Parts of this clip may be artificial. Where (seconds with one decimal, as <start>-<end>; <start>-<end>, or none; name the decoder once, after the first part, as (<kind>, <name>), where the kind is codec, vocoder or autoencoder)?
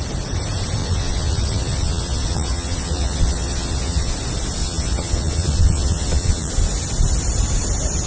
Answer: 0.8-4.1 (vocoder, Vocos); 4.6-6.5